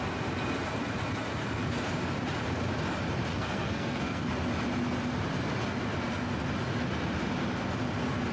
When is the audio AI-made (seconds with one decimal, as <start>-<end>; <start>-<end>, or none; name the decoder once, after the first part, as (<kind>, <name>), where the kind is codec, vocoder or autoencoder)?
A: 3.3-4.3 (codec, SNAC)